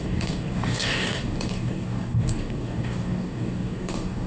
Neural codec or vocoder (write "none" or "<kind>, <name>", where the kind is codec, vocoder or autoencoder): codec, DAC